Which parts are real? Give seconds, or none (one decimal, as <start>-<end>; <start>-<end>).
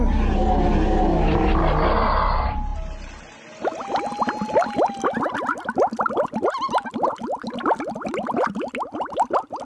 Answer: 0.0-9.6